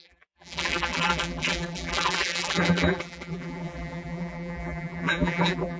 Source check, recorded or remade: remade